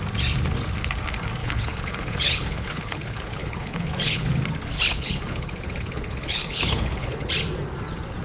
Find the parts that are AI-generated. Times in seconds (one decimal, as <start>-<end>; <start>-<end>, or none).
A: 1.4-4.3; 4.7-7.3